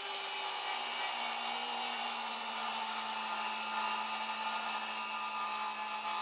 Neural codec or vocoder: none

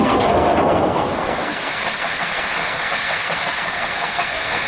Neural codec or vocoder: codec, SNAC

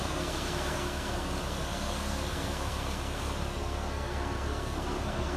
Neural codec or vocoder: codec, SNAC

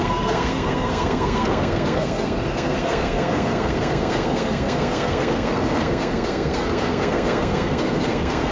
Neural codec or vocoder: codec, SNAC